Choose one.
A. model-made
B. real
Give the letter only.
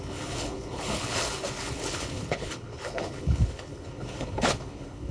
A